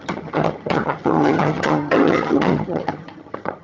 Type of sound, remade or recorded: remade